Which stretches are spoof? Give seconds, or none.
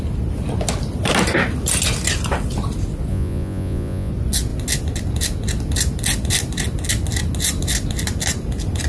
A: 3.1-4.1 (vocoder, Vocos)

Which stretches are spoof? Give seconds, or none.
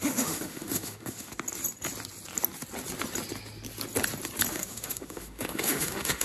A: 0.0-1.3 (autoencoder, DAC-VAE); 4.5-6.2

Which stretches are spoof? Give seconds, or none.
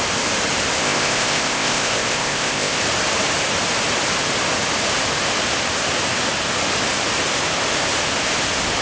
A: 0.8-2.8 (codec, ZipCodec)